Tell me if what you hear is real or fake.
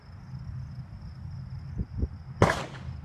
real